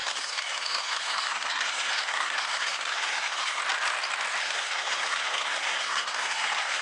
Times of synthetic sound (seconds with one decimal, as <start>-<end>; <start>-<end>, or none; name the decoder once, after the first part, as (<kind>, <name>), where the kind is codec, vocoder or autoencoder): 0.0-3.6 (codec, SNAC); 4.4-6.8